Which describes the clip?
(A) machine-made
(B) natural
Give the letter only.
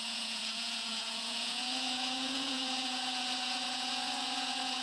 A